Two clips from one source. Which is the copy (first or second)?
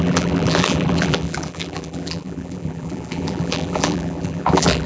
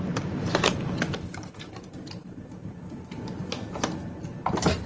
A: first